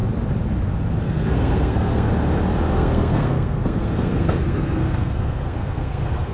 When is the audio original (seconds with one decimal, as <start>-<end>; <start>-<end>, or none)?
0.0-1.0; 2.1-2.7